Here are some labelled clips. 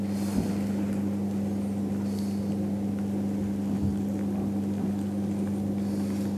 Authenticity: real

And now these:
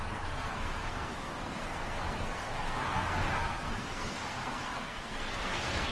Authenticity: fake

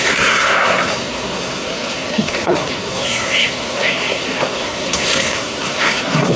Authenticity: fake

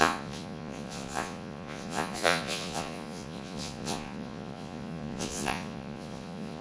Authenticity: fake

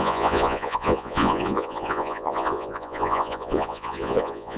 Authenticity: fake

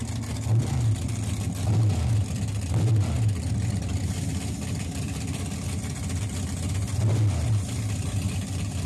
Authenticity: real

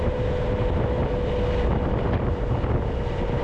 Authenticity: real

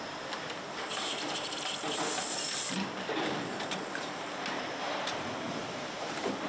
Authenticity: fake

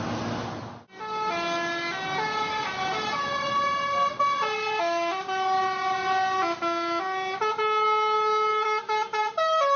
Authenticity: real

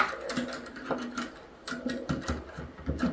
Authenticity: real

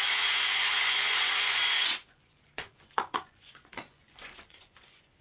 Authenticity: fake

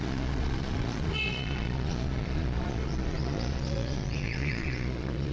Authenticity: fake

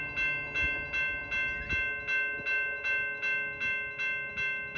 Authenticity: real